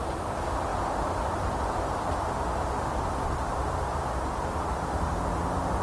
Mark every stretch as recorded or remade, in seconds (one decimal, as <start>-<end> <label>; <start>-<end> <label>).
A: 0.0-5.8 remade